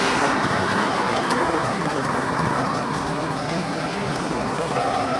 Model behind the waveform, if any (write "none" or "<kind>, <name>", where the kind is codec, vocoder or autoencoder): codec, SNAC